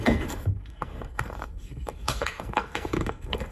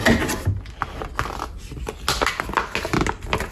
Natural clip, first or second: second